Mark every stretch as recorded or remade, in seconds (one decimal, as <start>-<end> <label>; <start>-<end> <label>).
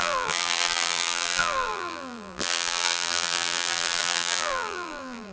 0.0-5.3 remade